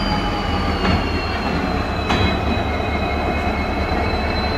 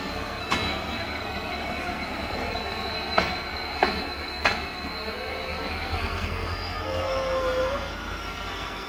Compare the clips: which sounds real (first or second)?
first